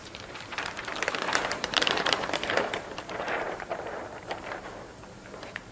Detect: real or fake fake